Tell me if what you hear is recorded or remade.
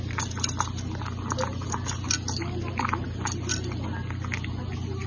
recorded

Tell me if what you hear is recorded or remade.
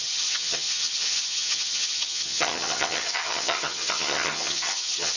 remade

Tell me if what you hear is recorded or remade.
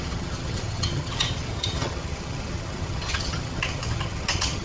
remade